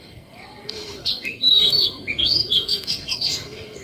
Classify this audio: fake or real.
fake